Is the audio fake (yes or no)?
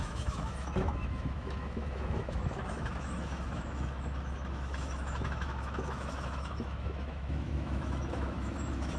yes